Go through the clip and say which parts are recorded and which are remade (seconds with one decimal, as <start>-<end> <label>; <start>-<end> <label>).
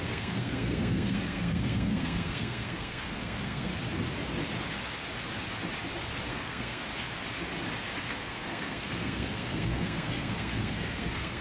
0.0-3.7 remade; 3.7-6.3 recorded; 6.3-6.9 remade; 6.9-8.0 recorded; 8.0-11.4 remade